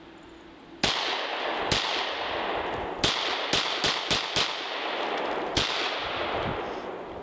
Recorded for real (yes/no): yes